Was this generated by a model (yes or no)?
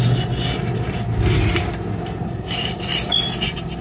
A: no